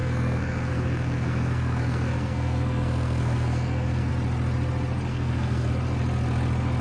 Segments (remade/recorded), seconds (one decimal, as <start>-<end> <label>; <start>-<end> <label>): 0.0-4.1 remade; 4.1-5.1 recorded; 5.1-5.7 remade; 5.7-6.8 recorded